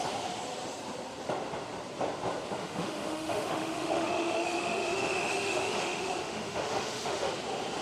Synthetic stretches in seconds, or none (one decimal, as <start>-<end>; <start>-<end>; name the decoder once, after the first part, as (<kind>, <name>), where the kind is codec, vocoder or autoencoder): 2.6-7.3 (autoencoder, DAC-VAE)